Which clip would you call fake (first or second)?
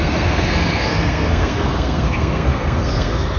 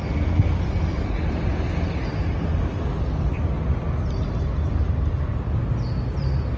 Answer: first